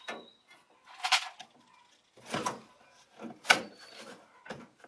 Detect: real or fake real